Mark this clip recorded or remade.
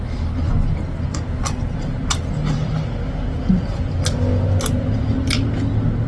recorded